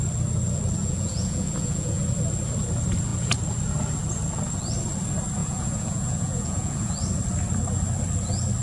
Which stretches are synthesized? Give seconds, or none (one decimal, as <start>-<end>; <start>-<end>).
0.8-2.0; 5.4-6.9